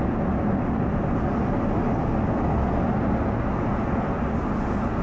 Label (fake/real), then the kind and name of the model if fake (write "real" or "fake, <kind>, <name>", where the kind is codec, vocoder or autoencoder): real